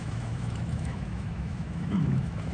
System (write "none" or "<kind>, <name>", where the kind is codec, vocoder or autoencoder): autoencoder, DAC-VAE